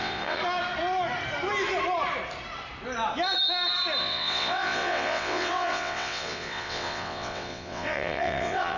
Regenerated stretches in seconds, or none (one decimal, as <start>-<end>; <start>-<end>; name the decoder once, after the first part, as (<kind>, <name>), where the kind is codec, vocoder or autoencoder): 0.0-0.4 (vocoder, WaveNeXt); 4.0-8.8